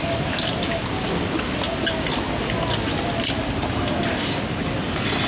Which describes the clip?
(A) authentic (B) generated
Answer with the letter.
A